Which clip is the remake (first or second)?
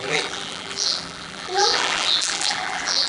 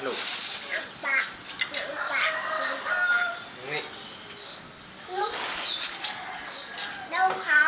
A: first